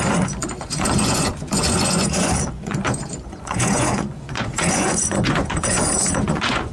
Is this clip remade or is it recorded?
remade